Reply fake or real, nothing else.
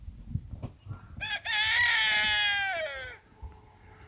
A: real